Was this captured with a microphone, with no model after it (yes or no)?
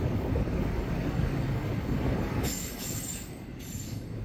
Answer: no